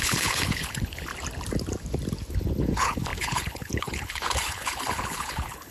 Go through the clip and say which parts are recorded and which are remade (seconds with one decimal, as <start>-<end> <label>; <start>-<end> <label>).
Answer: 0.0-1.1 remade; 1.1-2.3 recorded; 2.3-5.7 remade